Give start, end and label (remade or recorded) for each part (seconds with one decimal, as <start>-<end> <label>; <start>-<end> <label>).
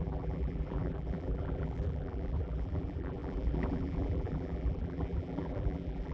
0.0-6.1 remade